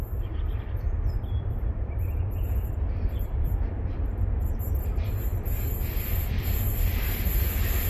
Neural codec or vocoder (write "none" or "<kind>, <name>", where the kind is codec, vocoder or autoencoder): vocoder, BigVGAN v2